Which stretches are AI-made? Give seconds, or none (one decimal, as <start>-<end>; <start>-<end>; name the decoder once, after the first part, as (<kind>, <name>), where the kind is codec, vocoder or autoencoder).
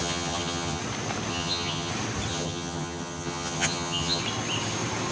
0.0-0.8 (vocoder, HiFi-GAN); 1.3-1.9; 2.3-4.2